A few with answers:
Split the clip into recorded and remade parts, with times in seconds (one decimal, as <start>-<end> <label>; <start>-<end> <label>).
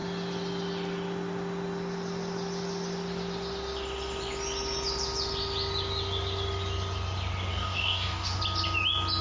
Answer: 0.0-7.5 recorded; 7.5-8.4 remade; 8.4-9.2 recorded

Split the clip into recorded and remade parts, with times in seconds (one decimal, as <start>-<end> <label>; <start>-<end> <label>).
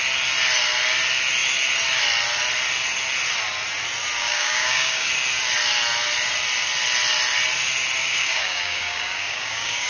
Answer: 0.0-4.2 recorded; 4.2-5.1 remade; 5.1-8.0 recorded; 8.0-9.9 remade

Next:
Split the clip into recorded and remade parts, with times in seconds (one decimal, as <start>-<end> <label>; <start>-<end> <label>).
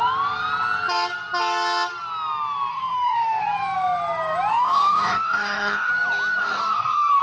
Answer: 0.0-2.7 recorded; 2.7-3.4 remade; 3.4-4.5 recorded; 4.5-5.9 remade; 5.9-6.4 recorded; 6.4-7.2 remade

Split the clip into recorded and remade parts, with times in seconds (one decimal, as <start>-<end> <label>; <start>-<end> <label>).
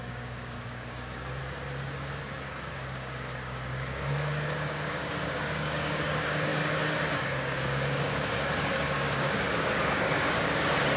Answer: 0.0-1.4 remade; 1.4-2.2 recorded; 2.2-11.0 remade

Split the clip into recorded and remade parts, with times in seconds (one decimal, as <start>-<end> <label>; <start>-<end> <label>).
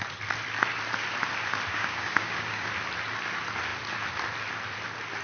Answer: 0.0-1.7 recorded; 1.7-2.7 remade; 2.7-5.2 recorded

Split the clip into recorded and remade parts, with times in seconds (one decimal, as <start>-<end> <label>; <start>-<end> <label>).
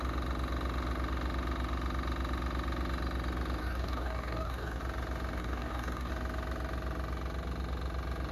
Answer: 0.0-3.6 recorded; 3.6-4.8 remade; 4.8-5.4 recorded; 5.4-6.1 remade; 6.1-8.3 recorded